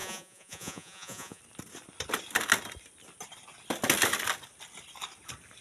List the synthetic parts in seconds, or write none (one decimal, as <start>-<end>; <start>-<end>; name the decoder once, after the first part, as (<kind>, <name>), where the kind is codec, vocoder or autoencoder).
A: 0.0-1.4 (vocoder, Vocos)